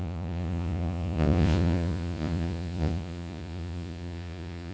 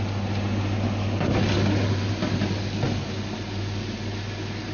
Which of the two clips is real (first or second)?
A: second